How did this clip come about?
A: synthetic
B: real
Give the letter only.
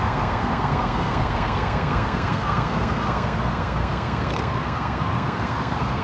A